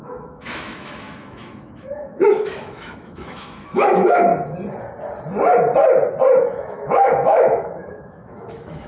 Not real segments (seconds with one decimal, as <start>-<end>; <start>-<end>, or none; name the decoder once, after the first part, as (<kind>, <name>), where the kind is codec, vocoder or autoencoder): 0.0-4.3 (autoencoder, DAC-VAE); 6.4-8.9